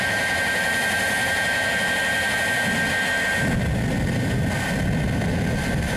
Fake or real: real